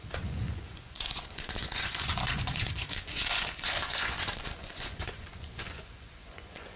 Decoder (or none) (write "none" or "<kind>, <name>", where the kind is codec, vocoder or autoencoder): vocoder, Vocos